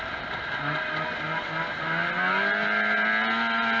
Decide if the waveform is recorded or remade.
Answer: recorded